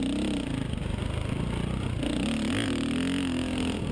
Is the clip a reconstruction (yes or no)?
no